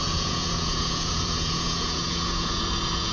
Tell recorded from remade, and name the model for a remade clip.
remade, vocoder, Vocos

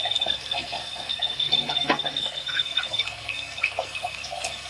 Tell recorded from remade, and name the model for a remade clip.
remade, codec, SNAC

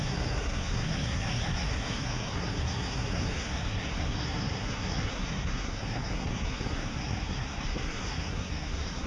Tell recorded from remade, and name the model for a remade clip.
remade, codec, SNAC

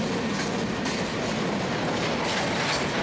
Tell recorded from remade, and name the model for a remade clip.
recorded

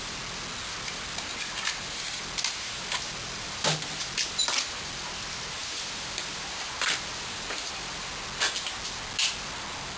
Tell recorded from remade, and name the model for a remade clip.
recorded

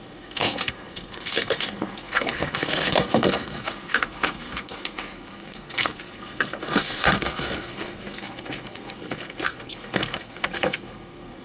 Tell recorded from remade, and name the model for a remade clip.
remade, codec, SNAC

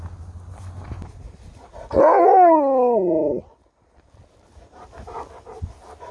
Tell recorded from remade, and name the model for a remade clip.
recorded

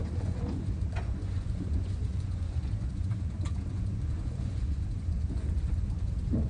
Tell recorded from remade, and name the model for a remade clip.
remade, vocoder, Vocos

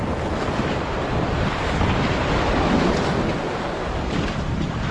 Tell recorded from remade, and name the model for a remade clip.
recorded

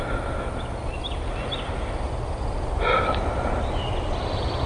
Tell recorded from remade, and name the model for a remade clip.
recorded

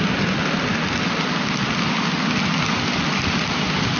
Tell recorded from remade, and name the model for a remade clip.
recorded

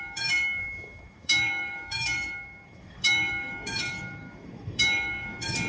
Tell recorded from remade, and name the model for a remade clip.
remade, autoencoder, DAC-VAE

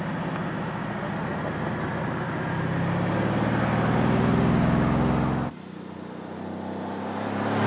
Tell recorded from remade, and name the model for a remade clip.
recorded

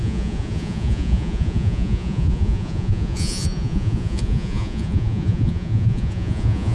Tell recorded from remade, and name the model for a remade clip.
remade, vocoder, Vocos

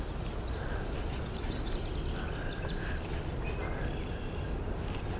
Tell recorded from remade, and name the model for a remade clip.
recorded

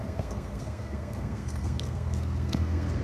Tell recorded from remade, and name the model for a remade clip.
remade, codec, SNAC